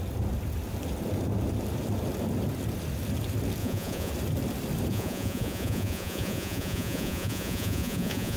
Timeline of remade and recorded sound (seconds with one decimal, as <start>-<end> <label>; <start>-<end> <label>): 0.0-3.6 recorded; 3.6-4.1 remade; 4.1-4.9 recorded; 4.9-8.4 remade